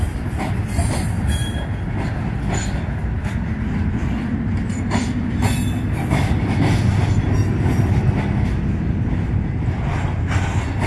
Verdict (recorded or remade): recorded